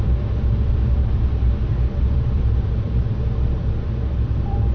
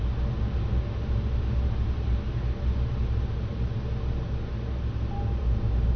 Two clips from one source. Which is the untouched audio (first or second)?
second